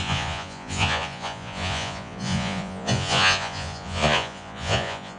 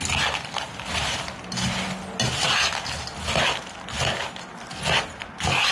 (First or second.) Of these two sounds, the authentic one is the second